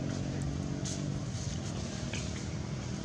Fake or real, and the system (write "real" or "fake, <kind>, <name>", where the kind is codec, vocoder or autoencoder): real